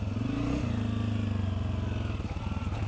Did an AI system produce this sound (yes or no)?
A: no